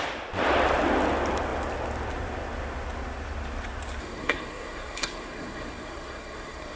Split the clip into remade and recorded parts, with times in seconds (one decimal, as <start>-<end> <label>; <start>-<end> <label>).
0.0-4.0 recorded; 4.0-6.8 remade